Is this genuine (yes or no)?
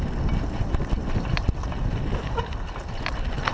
yes